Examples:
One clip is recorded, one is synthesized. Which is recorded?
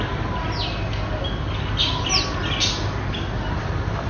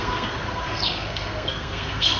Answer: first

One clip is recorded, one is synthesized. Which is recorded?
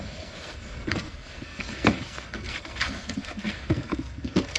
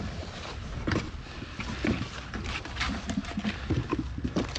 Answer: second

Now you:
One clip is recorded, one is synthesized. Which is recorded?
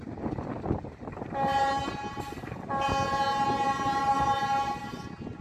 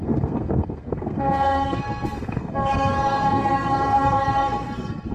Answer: first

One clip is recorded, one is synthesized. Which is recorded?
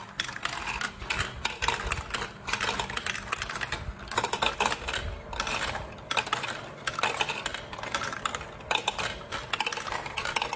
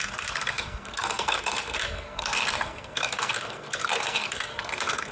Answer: first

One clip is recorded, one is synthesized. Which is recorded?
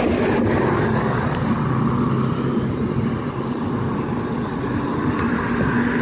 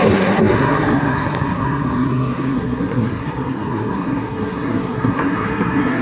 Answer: first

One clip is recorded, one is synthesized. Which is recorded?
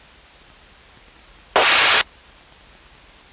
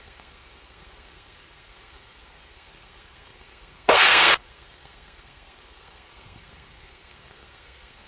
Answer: first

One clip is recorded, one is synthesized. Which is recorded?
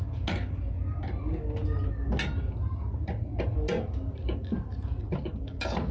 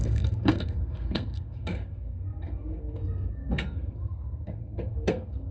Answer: first